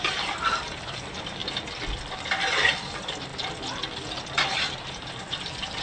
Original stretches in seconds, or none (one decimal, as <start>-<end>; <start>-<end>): 1.4-2.3; 3.3-4.6

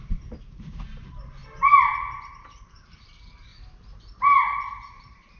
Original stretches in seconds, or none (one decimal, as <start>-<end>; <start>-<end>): 1.4-2.3; 3.5-5.0

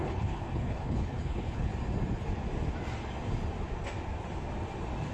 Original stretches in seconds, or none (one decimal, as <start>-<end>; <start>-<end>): 1.7-5.1